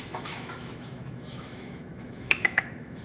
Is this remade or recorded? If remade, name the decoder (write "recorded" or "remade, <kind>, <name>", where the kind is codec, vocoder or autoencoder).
remade, autoencoder, DAC-VAE